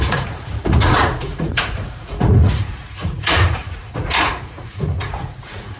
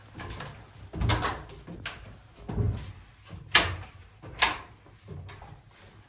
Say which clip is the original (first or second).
second